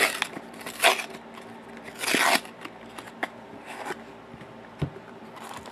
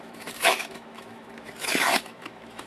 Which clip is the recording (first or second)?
first